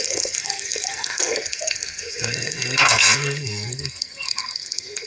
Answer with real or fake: fake